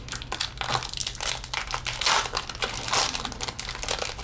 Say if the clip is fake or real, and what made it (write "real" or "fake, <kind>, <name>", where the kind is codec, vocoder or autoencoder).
real